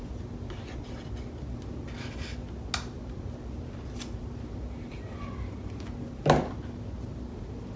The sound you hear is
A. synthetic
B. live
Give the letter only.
B